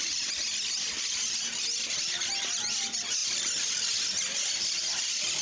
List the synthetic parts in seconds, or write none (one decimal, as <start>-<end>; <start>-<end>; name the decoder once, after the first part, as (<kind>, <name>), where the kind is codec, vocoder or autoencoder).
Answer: none